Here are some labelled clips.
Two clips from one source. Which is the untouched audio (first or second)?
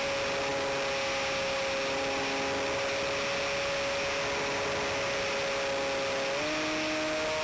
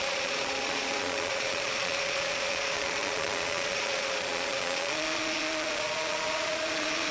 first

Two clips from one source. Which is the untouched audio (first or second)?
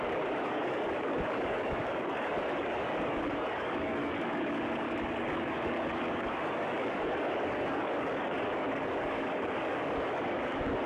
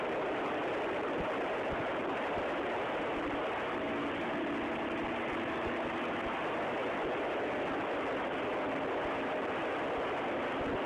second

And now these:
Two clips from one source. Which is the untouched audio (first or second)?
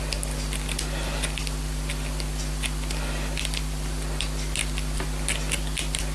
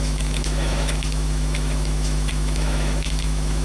first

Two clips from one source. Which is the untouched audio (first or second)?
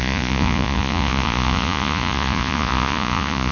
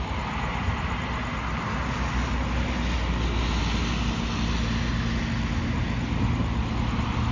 second